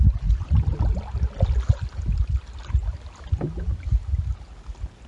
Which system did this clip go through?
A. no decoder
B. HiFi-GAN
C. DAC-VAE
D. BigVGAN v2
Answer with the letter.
A